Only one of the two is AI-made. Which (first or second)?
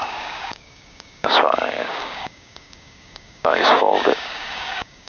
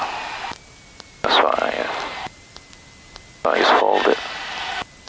first